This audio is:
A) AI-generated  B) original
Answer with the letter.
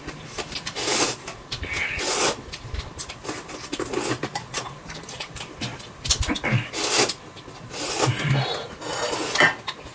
B